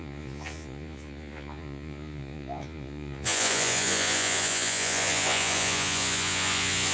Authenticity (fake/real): fake